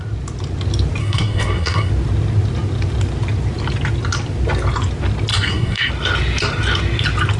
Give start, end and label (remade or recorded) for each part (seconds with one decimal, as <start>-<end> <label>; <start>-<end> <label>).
0.0-1.0 recorded; 1.0-1.9 remade; 1.9-5.3 recorded; 5.3-5.9 remade; 5.9-7.4 recorded